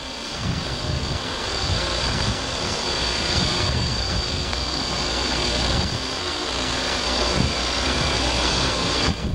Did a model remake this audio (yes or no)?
yes